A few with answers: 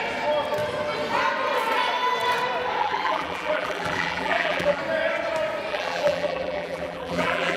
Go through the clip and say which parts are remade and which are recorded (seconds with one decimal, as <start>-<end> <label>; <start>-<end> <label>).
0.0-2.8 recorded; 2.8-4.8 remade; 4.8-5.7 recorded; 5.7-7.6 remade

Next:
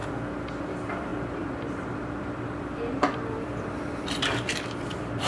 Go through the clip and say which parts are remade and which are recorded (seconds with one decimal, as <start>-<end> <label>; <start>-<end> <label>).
0.0-0.6 recorded; 0.6-5.3 remade

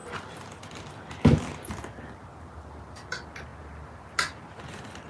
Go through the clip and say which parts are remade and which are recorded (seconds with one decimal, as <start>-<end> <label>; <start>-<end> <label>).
0.0-5.1 recorded

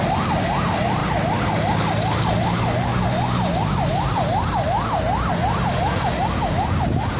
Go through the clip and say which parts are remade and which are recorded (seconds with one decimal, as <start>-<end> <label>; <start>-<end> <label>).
0.0-7.2 recorded